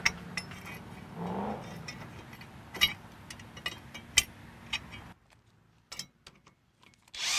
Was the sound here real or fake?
real